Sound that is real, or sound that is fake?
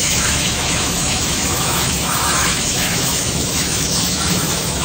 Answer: fake